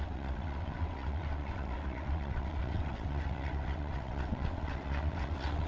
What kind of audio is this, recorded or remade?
remade